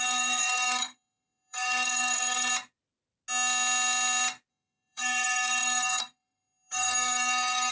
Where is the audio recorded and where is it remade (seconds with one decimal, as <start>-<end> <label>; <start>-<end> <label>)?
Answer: 0.0-2.5 remade; 2.5-4.5 recorded; 4.5-7.7 remade